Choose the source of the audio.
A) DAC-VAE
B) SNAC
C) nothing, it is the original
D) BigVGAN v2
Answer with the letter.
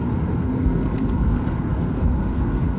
B